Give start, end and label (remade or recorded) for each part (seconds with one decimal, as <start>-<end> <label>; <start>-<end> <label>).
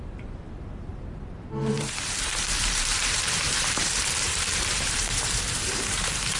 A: 0.0-0.9 remade; 0.9-1.7 recorded; 1.7-6.4 remade